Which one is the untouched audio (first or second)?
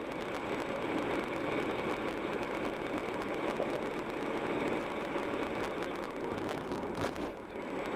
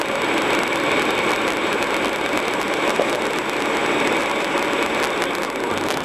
first